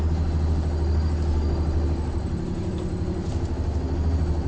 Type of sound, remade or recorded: recorded